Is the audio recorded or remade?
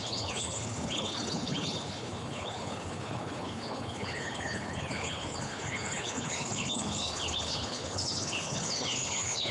remade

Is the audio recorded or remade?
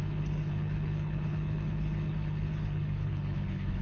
remade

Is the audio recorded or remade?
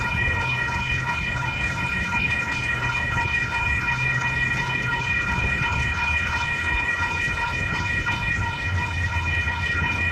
remade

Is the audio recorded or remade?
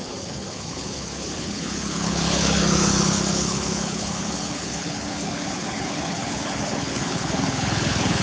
remade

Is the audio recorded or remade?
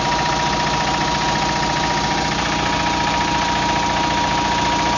recorded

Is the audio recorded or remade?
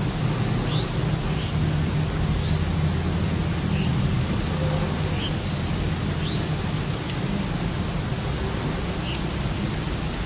recorded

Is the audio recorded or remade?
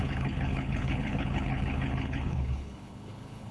remade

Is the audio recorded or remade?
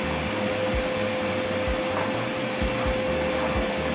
recorded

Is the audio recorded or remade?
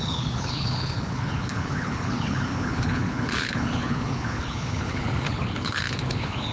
remade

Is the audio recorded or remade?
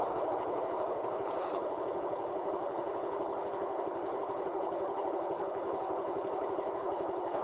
remade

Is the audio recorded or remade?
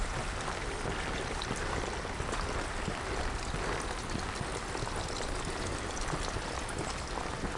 recorded